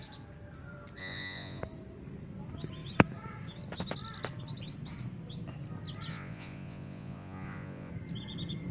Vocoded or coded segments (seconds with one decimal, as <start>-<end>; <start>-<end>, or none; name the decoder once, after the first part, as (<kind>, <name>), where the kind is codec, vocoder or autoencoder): 1.0-1.6 (vocoder, Vocos); 6.1-7.9